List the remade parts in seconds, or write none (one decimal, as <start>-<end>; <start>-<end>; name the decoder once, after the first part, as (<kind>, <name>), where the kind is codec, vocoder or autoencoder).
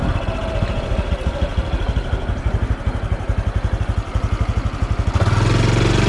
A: none